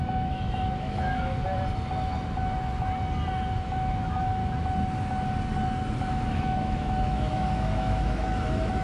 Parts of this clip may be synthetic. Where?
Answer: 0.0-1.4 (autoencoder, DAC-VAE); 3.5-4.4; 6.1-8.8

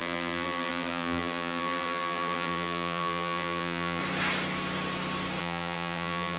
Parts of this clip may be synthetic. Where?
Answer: 0.0-4.0 (vocoder, BigVGAN v2); 5.4-6.4

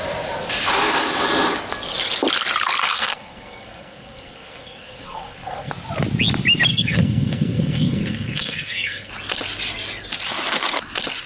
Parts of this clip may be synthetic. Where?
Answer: 2.8-5.7 (codec, SNAC); 6.7-9.1

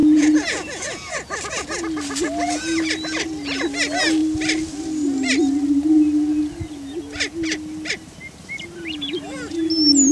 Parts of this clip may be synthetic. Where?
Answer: 0.0-1.1 (vocoder, Vocos)